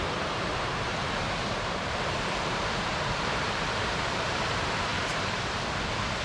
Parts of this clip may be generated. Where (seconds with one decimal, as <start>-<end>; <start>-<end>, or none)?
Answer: 0.7-4.4; 4.9-5.6